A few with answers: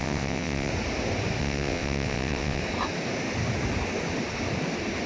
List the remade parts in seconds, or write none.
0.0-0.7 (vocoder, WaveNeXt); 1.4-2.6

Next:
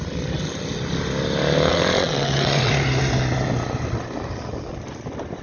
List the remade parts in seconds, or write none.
1.7-2.7 (vocoder, WaveNeXt)